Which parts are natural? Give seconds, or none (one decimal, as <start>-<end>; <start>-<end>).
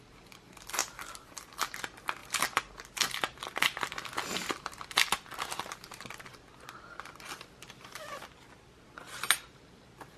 0.0-0.8; 1.4-2.2; 3.6-10.2